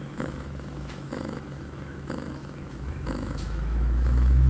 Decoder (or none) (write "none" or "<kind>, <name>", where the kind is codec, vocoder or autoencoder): autoencoder, DAC-VAE